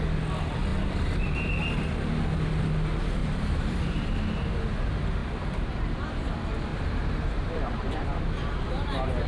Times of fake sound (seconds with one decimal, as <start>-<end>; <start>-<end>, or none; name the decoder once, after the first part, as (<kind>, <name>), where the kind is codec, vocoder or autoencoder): 0.7-1.6 (vocoder, BigVGAN v2); 3.2-4.5; 5.2-6.1; 6.7-8.0